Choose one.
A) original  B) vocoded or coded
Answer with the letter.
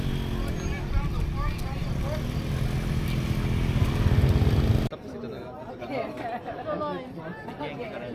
A